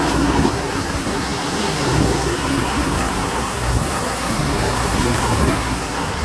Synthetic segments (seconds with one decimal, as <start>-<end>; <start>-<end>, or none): 0.0-6.2